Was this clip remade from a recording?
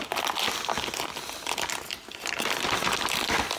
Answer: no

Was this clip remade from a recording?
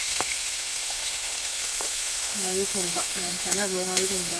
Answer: yes